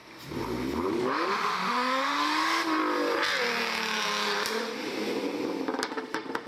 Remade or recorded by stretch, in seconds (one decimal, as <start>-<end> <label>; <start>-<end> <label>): 0.0-0.9 recorded; 0.9-2.8 remade; 2.8-5.9 recorded; 5.9-6.5 remade